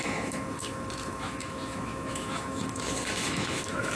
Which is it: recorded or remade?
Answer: remade